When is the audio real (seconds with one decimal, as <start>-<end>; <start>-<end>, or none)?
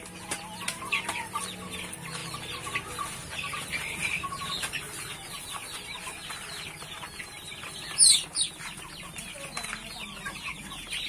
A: 0.0-11.1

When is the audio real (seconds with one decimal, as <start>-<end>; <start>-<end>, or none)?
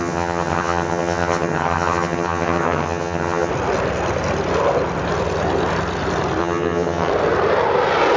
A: 3.5-6.4; 7.1-8.2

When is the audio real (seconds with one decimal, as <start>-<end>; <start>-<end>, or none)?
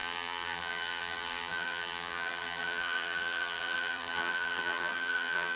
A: none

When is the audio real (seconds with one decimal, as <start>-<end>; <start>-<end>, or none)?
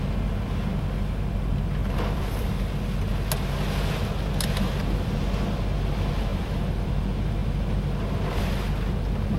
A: 0.0-1.8; 2.5-6.3; 6.9-9.4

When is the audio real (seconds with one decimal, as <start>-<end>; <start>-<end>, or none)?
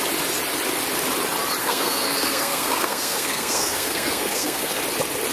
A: 0.0-1.6; 4.8-5.3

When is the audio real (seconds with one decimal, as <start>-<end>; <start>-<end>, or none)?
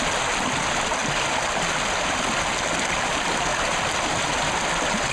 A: 0.0-1.0; 1.7-5.1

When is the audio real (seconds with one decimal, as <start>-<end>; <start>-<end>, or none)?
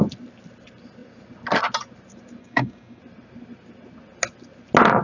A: 0.0-2.4; 3.0-5.0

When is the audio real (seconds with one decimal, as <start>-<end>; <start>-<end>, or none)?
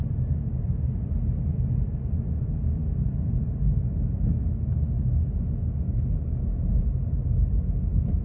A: 0.0-8.2